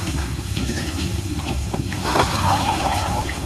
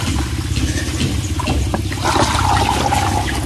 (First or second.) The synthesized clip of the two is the first